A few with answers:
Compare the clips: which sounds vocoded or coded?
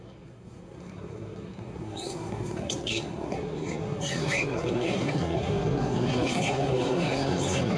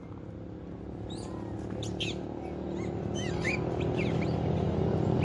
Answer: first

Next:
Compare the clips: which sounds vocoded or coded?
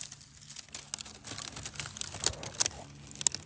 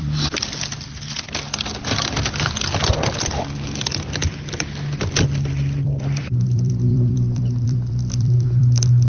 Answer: second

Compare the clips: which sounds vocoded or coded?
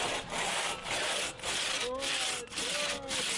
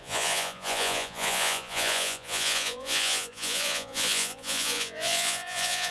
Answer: second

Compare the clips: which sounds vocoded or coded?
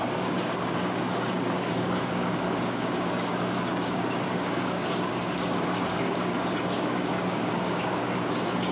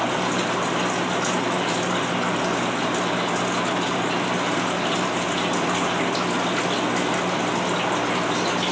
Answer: first